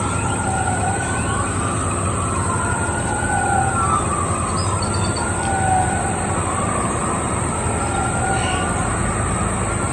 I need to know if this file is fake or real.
real